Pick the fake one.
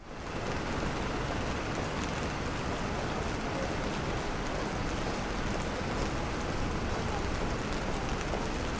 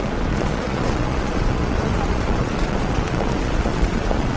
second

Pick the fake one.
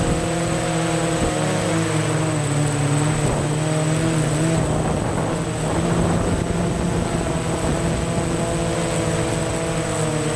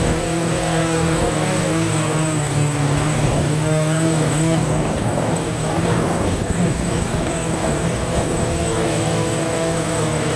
second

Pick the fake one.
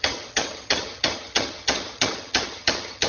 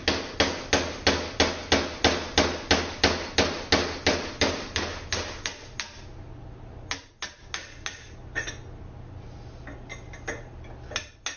first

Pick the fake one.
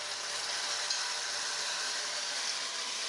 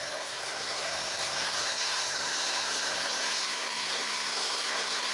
second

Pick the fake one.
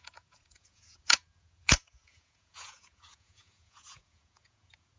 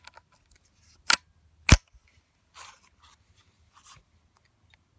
first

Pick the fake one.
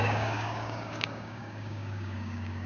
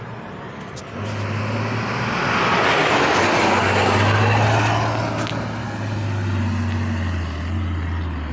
first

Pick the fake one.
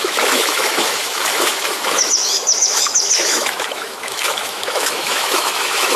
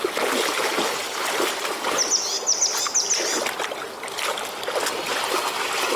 first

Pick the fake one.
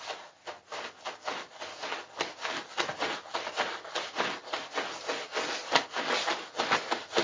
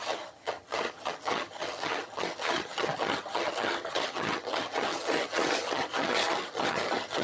second